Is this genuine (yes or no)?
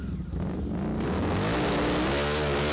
yes